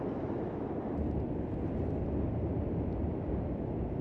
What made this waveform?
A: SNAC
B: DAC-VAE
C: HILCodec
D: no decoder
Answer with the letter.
D